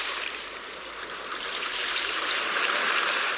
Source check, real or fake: fake